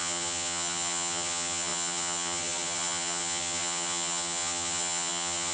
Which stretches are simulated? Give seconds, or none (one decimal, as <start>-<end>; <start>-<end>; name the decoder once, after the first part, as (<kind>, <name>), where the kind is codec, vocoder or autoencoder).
0.0-5.5 (vocoder, HiFi-GAN)